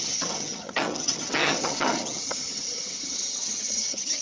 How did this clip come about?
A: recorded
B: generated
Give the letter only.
B